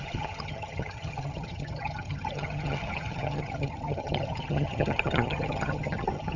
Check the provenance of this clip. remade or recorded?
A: remade